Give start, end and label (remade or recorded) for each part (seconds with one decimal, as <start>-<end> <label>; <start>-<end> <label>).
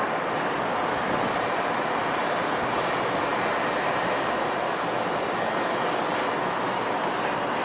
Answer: 0.0-7.6 recorded